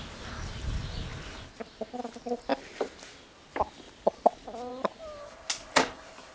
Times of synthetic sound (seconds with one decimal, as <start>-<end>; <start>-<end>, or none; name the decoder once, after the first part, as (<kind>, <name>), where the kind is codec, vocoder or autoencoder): none